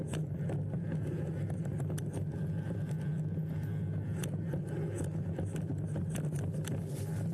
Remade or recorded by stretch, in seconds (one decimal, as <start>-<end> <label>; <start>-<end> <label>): 0.0-7.3 recorded